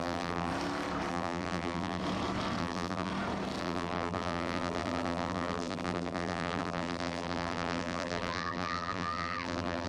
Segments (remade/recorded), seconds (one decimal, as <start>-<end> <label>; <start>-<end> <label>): 0.0-0.5 remade; 0.5-1.1 recorded; 1.1-2.0 remade; 2.0-2.6 recorded; 2.6-3.1 remade; 3.1-3.6 recorded; 3.6-9.9 remade